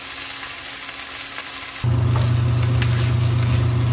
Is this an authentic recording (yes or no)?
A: yes